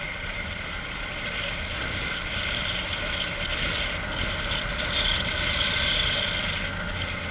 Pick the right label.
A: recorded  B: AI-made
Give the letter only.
A